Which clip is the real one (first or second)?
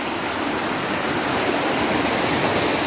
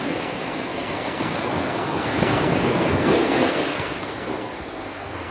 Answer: first